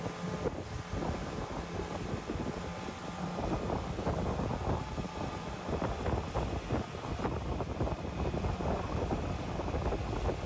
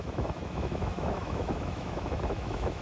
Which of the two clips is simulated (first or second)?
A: second